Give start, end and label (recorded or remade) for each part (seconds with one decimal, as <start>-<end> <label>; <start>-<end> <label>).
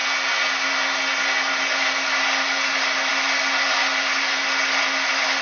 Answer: 0.0-5.4 recorded